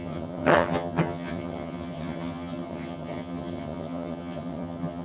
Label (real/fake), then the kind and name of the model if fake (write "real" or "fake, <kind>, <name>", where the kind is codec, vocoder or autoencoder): fake, vocoder, HiFi-GAN